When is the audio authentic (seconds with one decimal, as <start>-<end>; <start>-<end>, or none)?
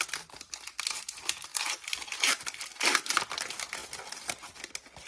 0.0-5.1